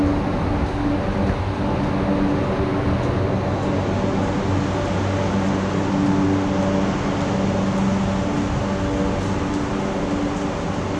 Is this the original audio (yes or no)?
yes